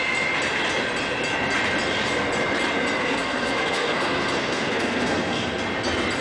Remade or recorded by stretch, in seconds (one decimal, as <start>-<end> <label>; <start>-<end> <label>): 0.0-3.0 recorded; 3.0-5.6 remade; 5.6-6.2 recorded